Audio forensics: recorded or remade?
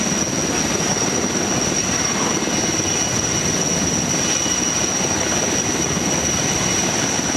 recorded